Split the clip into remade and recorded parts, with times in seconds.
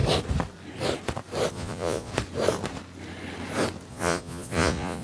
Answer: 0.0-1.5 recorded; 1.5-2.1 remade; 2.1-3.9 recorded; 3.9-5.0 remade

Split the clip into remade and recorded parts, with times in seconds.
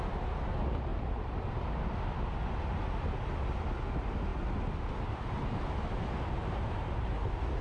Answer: 0.0-0.9 recorded; 0.9-1.5 remade; 1.5-6.4 recorded; 6.4-7.6 remade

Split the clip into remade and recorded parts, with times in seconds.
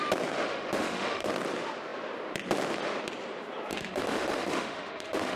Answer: 0.0-0.5 recorded; 0.5-1.3 remade; 1.3-3.7 recorded; 3.7-5.4 remade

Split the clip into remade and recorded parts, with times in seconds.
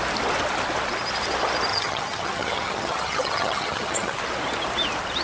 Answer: 0.0-1.7 recorded; 1.7-4.2 remade; 4.2-5.2 recorded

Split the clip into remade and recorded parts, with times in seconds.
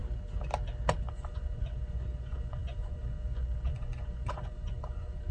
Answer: 0.0-1.1 recorded; 1.1-5.3 remade